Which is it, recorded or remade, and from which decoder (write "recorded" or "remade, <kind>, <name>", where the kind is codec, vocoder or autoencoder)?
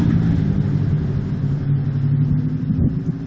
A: recorded